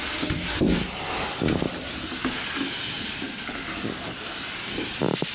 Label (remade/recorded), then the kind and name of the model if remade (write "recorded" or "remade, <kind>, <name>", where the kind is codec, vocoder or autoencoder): recorded